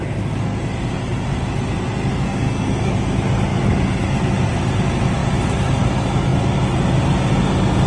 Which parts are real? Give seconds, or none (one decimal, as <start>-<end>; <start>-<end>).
0.0-2.1; 2.9-7.9